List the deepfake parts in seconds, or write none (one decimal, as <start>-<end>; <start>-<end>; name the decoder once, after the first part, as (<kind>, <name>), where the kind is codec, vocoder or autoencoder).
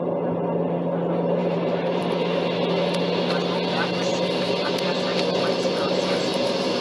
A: 1.4-2.2 (vocoder, BigVGAN v2)